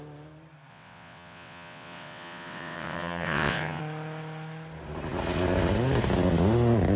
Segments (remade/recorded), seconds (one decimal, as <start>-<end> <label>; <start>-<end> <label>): 0.0-0.7 recorded; 0.7-3.8 remade; 3.8-7.0 recorded